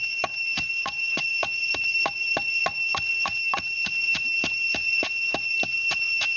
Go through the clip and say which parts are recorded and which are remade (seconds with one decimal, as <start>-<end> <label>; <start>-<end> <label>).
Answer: 0.0-0.5 recorded; 0.5-1.2 remade; 1.2-6.4 recorded